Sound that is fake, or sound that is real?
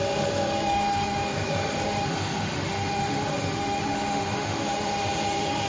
fake